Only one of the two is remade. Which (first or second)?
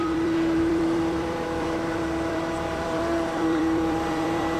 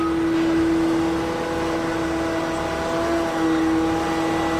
first